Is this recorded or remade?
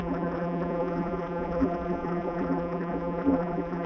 remade